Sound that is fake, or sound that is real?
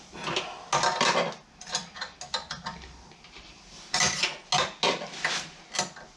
real